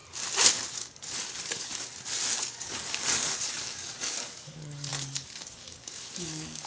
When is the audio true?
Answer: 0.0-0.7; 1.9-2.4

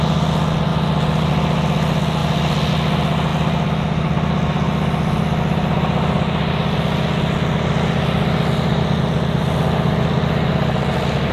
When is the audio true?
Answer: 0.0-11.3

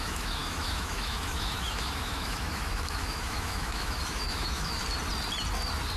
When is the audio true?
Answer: 4.8-6.0

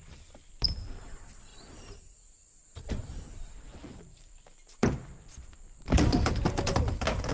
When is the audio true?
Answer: 0.0-1.5; 4.6-7.3

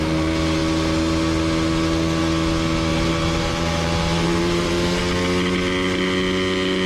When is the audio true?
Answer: 0.0-2.9; 5.0-6.9

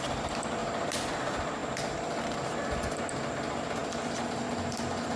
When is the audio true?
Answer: 0.0-5.2